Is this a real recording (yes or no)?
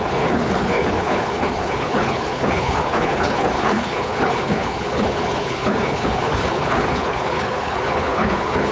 no